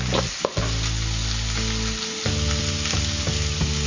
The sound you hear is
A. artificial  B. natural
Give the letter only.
B